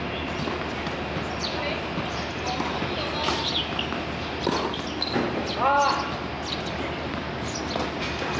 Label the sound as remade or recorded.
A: recorded